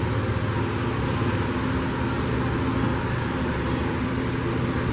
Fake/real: real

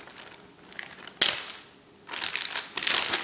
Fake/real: real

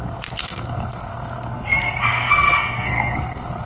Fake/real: fake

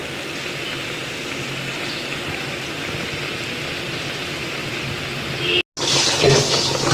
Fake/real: real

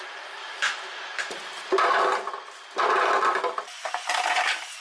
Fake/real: fake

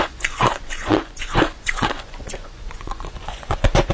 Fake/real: fake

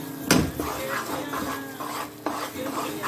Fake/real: real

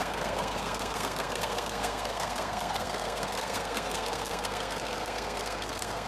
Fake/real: fake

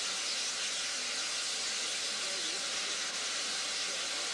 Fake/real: real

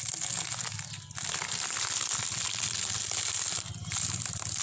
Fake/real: real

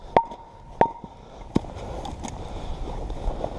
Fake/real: real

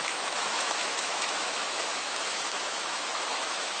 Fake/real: fake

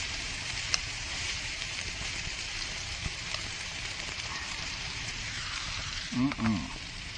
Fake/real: fake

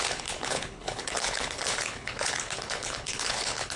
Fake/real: fake